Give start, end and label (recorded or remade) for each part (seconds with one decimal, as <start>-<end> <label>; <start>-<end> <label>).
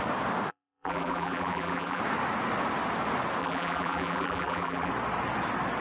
0.0-0.5 recorded; 0.5-2.0 remade; 2.0-3.4 recorded; 3.4-4.9 remade; 4.9-5.8 recorded